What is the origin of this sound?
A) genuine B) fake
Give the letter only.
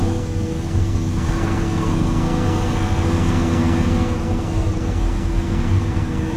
B